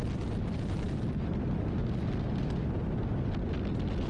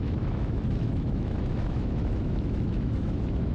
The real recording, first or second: first